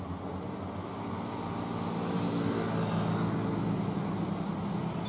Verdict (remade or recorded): recorded